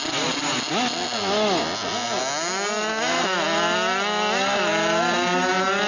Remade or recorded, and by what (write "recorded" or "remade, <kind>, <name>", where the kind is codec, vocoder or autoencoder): recorded